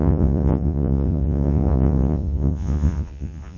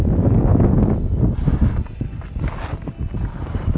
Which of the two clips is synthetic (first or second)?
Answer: first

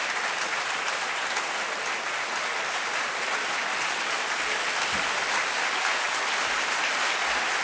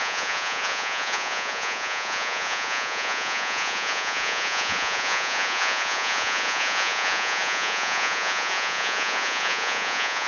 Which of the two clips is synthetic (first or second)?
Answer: second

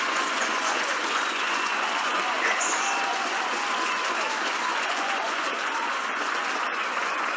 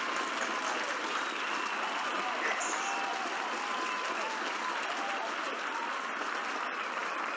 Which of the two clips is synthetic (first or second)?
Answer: first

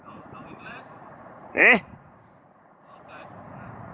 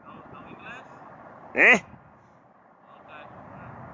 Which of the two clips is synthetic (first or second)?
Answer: first